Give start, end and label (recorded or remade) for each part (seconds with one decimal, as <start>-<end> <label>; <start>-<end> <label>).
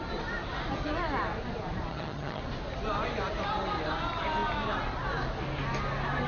0.0-1.9 recorded; 1.9-2.4 remade; 2.4-6.3 recorded